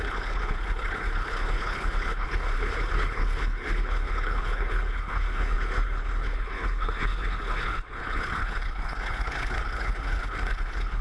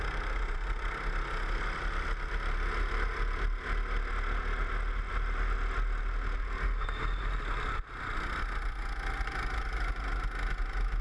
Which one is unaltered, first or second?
second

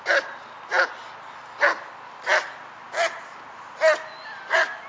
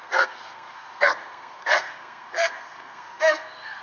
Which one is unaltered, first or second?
first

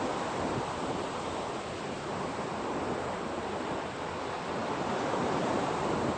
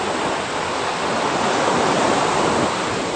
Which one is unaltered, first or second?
second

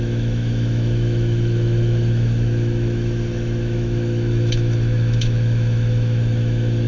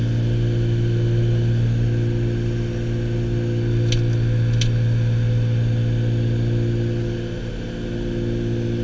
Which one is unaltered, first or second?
second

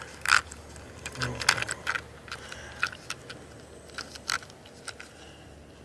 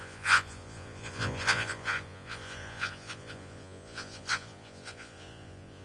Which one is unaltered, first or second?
first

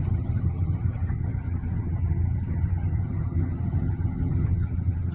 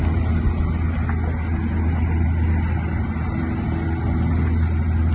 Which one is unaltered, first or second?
second